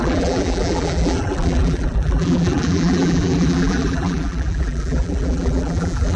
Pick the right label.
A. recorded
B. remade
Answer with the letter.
B